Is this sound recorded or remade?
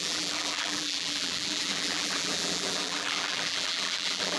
remade